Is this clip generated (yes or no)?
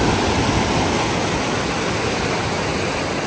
no